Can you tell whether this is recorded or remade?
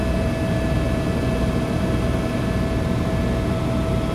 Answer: recorded